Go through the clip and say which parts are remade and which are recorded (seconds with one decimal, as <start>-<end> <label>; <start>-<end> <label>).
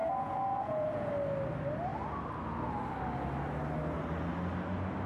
0.0-1.1 remade; 1.1-5.1 recorded